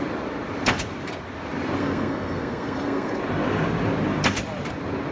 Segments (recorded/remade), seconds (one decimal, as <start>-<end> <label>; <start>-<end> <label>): 0.0-1.8 recorded; 1.8-3.2 remade; 3.2-5.1 recorded